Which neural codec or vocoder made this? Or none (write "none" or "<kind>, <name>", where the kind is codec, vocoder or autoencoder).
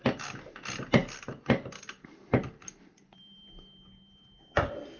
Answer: none